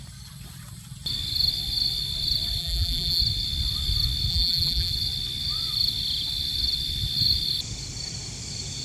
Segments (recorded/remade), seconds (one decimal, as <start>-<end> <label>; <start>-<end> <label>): 0.0-2.6 recorded; 2.6-3.2 remade; 3.2-4.3 recorded; 4.3-4.9 remade; 4.9-8.8 recorded